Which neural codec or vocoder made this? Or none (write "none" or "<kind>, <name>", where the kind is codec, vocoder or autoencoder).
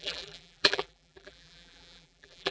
vocoder, BigVGAN v2